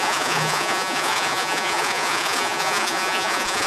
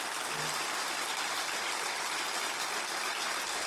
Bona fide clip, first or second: second